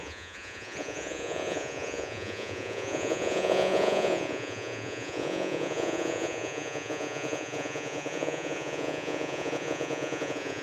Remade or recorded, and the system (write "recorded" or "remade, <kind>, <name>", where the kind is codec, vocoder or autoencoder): remade, vocoder, Vocos